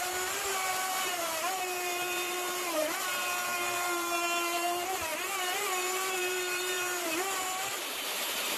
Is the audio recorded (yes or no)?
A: no